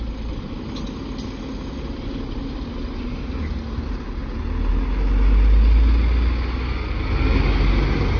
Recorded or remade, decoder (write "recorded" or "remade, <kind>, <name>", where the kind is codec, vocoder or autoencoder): recorded